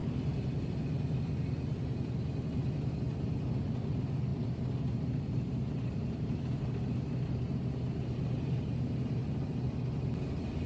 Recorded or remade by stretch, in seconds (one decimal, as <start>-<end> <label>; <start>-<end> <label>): 0.0-4.3 recorded; 4.3-9.1 remade; 9.1-10.7 recorded